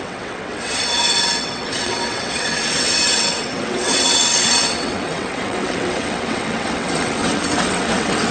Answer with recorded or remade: remade